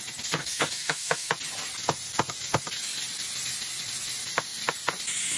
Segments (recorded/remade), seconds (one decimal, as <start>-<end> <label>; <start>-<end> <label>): 0.0-0.4 recorded; 0.4-1.3 remade; 1.3-5.4 recorded